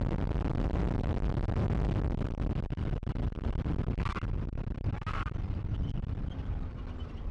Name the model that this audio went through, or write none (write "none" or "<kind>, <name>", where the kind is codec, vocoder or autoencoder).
none